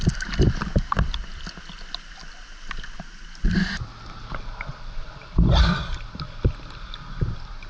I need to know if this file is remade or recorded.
recorded